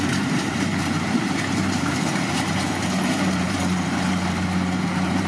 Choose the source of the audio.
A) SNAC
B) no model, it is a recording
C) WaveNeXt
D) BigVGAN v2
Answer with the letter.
D